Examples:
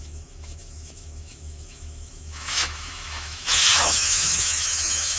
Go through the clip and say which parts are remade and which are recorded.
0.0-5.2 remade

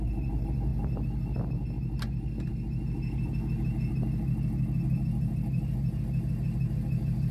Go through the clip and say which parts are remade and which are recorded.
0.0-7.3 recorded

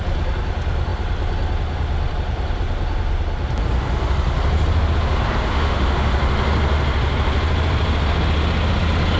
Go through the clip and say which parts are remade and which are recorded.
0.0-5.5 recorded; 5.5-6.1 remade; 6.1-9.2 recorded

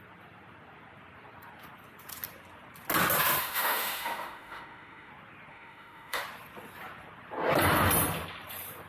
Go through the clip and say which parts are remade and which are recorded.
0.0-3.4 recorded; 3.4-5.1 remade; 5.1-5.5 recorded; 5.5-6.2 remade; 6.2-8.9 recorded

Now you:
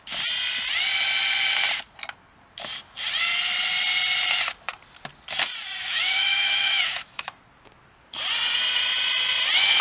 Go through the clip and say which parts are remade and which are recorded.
0.0-5.8 recorded; 5.8-7.3 remade; 7.3-9.8 recorded